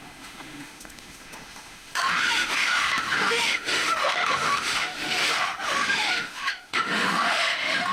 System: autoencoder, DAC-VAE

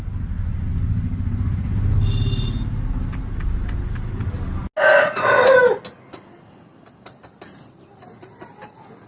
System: none